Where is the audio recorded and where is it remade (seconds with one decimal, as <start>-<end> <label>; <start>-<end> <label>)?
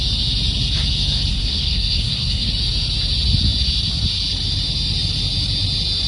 0.0-1.3 recorded; 1.3-2.5 remade; 2.5-6.1 recorded